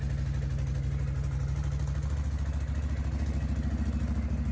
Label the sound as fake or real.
real